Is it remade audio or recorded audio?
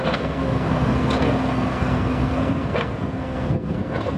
remade